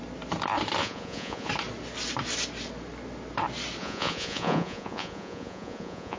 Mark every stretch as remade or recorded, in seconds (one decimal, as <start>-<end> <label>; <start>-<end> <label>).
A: 0.0-0.8 recorded; 0.8-1.5 remade; 1.5-3.8 recorded; 3.8-6.2 remade